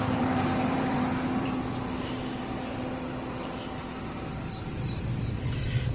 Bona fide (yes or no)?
no